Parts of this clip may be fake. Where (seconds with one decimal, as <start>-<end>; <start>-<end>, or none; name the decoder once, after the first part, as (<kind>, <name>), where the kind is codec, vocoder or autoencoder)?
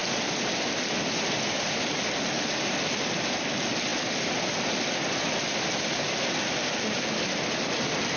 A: none